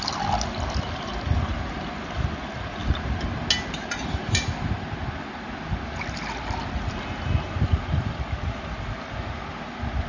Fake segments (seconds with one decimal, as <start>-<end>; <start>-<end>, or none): none